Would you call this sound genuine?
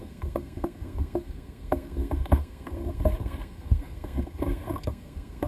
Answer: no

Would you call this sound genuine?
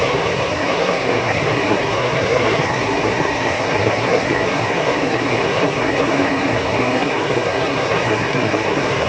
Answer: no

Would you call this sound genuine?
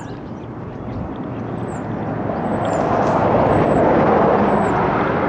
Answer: yes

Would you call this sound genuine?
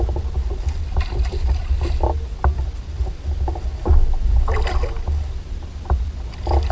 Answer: yes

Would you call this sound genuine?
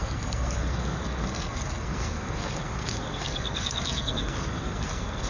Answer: no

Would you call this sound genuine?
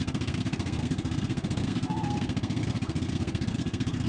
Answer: no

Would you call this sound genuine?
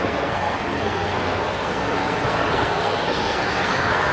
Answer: no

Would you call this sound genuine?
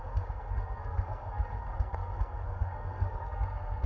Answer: no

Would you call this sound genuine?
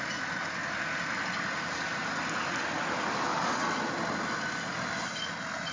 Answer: yes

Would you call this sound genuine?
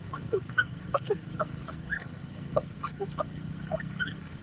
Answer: no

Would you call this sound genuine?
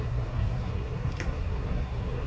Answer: no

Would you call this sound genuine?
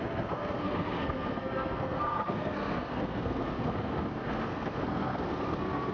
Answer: no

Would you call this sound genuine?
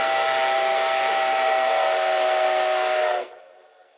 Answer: no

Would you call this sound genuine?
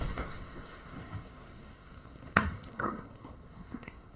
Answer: no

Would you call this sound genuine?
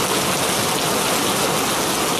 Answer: yes